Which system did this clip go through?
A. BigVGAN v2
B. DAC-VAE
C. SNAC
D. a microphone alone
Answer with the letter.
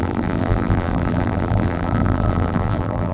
A